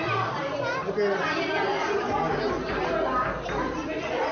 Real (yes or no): yes